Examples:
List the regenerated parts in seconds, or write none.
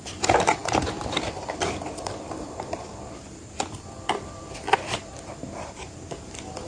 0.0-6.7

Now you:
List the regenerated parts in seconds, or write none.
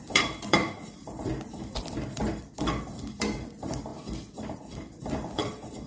0.0-5.9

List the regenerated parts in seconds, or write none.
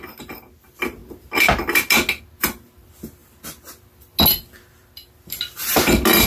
none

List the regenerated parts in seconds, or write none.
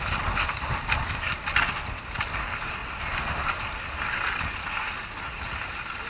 none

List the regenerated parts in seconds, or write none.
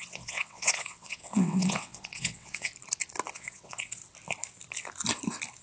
0.0-2.7; 3.3-4.0